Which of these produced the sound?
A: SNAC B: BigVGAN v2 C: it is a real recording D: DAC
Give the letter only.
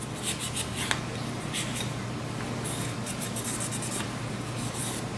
C